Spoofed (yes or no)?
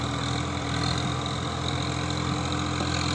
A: no